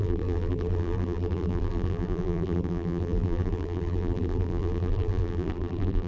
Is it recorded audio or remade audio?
remade